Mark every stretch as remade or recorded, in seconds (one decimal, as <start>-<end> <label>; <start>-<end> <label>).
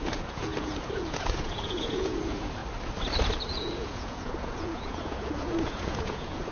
0.0-2.6 remade; 2.6-3.5 recorded; 3.5-6.5 remade